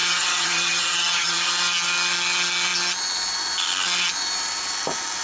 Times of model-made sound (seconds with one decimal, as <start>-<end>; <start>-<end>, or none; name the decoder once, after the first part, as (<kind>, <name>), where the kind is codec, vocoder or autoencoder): 0.0-1.5 (vocoder, HiFi-GAN)